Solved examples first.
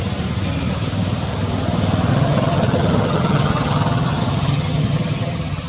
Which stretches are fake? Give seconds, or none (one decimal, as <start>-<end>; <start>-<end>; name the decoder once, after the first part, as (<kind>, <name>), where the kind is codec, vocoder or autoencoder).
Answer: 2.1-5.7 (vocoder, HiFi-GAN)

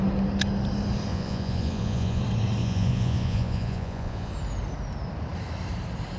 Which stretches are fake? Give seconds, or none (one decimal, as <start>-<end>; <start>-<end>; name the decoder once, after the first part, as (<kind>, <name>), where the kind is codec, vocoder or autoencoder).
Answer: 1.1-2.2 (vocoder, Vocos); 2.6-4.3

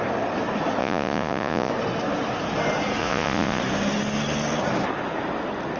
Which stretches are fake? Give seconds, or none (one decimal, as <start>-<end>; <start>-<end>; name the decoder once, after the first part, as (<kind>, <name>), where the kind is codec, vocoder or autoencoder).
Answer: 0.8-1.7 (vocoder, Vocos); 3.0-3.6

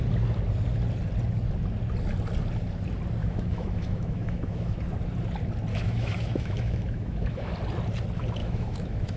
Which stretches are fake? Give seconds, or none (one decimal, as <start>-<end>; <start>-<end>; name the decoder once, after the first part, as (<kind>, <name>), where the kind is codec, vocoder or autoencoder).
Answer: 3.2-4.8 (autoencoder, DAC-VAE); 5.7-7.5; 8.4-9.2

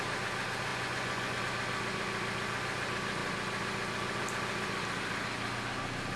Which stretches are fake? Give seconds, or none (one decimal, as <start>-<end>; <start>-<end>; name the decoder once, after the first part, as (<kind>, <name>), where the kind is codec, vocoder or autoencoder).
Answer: 0.7-1.4 (vocoder, Vocos)

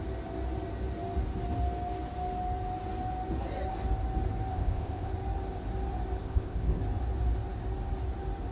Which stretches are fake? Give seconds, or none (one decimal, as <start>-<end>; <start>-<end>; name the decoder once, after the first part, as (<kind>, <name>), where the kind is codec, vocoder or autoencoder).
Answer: 4.5-5.1 (codec, ZipCodec); 6.2-6.8

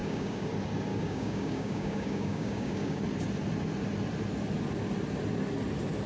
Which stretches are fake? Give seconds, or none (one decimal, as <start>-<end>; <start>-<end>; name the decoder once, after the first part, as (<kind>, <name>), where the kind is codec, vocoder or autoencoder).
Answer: 0.0-0.5 (codec, DAC); 0.9-3.0